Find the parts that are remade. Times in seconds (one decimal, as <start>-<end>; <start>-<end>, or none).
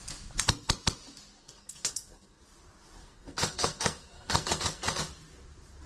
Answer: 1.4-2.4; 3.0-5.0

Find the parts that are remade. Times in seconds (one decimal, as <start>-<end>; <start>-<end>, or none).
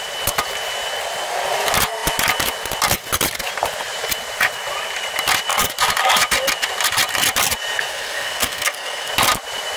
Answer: 7.9-9.1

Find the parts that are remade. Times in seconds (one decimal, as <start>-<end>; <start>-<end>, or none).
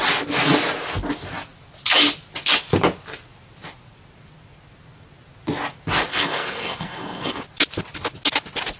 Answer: 6.1-7.4